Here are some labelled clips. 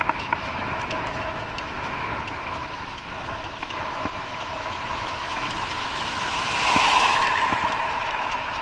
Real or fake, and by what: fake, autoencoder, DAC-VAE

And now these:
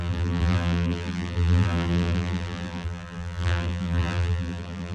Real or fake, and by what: fake, vocoder, BigVGAN v2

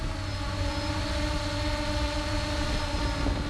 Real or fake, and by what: real